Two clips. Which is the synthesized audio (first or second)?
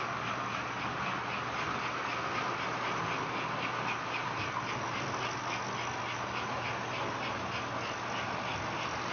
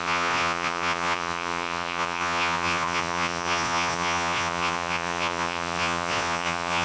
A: second